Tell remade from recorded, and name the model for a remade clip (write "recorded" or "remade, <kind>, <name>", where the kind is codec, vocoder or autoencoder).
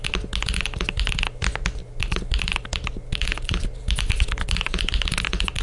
recorded